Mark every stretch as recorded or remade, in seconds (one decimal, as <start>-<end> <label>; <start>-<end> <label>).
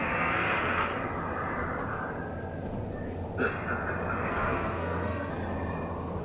0.0-0.9 remade; 0.9-4.3 recorded; 4.3-5.3 remade; 5.3-6.2 recorded